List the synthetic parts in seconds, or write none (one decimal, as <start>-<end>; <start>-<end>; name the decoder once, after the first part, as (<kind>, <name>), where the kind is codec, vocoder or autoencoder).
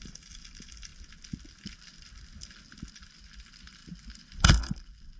none